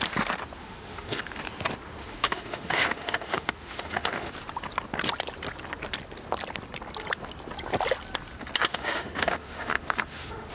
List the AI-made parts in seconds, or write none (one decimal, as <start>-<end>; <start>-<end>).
0.6-1.2; 2.0-4.3; 8.7-10.5

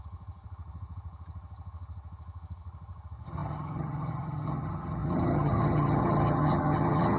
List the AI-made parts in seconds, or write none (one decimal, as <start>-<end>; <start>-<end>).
0.0-7.2

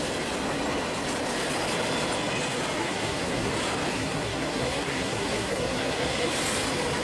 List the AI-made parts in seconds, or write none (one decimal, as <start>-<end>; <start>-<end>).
2.8-3.5; 3.9-6.3

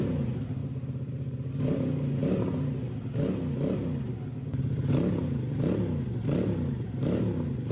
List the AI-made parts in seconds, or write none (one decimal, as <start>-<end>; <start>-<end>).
0.6-1.5

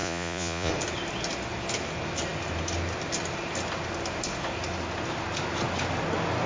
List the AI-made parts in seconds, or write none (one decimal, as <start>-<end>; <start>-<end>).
0.0-0.7

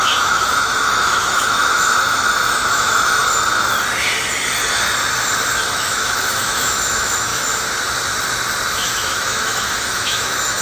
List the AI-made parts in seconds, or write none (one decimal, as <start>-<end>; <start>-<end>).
0.0-3.2; 5.5-7.3; 8.7-10.6

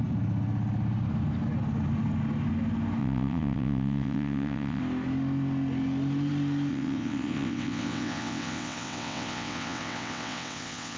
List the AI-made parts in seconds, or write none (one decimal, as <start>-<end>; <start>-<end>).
3.0-4.8; 6.7-11.0